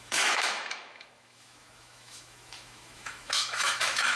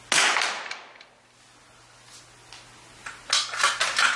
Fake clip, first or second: first